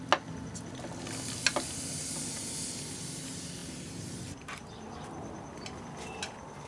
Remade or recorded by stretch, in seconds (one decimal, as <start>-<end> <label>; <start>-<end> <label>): 0.0-6.7 recorded